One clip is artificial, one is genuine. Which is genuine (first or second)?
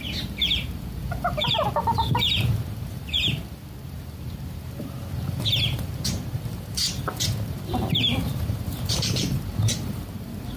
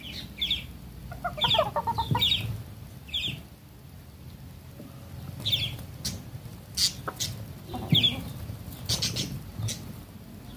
second